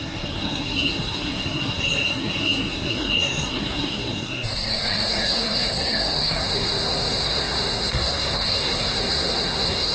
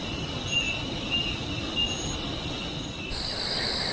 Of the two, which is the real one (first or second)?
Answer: second